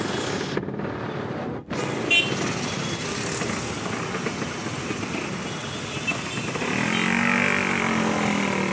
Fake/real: real